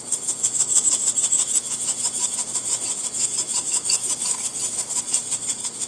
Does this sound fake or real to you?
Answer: fake